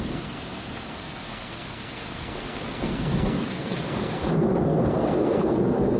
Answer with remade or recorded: remade